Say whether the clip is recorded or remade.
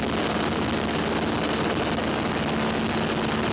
recorded